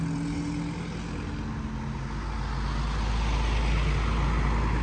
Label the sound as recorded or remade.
recorded